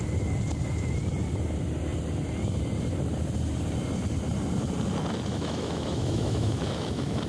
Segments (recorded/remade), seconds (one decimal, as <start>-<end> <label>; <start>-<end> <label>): 0.0-5.3 recorded; 5.3-7.3 remade